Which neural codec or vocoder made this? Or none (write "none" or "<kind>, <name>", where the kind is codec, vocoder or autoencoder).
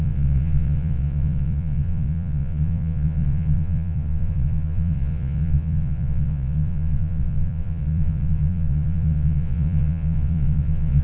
vocoder, Vocos